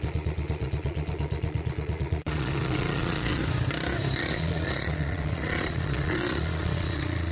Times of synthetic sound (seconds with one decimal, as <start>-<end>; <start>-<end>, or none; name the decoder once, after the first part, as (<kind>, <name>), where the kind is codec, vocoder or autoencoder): 0.0-3.4 (vocoder, Vocos); 4.2-7.3